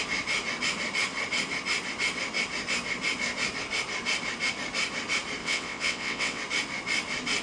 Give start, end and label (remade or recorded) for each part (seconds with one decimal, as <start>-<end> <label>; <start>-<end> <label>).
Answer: 0.0-5.4 recorded; 5.4-6.4 remade; 6.4-7.4 recorded